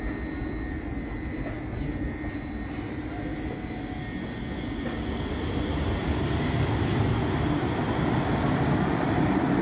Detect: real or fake real